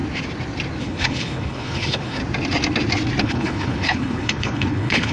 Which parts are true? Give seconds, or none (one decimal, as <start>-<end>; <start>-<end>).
0.0-0.8; 2.2-3.2